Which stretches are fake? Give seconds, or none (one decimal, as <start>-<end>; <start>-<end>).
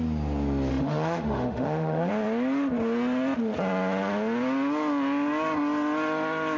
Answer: 0.7-2.1